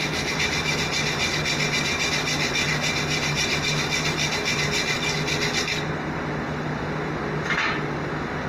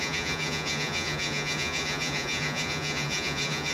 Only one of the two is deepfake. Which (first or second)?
second